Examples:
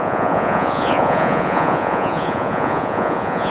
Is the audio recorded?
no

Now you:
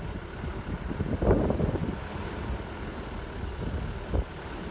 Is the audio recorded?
yes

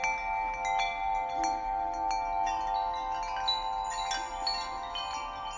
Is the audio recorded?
yes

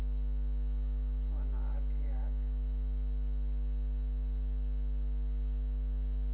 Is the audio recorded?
yes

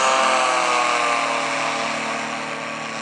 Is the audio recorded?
yes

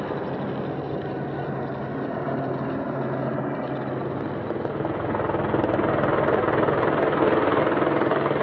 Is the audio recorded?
yes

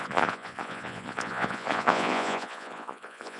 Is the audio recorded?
no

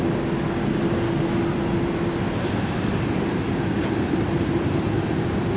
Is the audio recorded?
yes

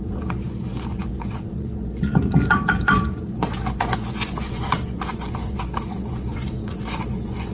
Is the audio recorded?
no